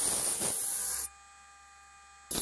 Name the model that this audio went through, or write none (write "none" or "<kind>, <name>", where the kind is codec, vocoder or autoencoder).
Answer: none